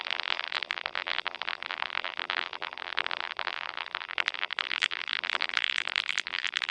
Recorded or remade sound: remade